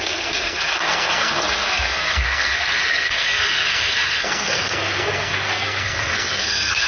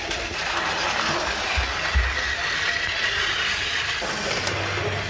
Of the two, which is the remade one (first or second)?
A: first